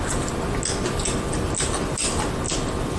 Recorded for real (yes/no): yes